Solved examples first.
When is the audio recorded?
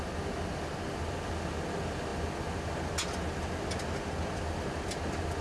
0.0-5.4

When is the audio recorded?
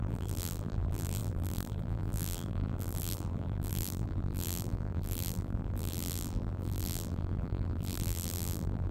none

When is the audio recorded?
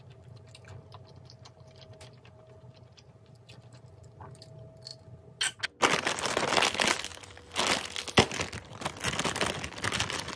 0.0-10.4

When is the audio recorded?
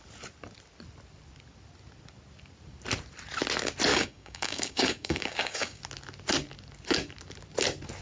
0.0-3.9; 5.8-8.0